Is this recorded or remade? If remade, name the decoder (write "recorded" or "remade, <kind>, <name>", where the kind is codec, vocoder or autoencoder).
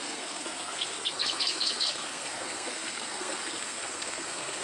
remade, codec, SNAC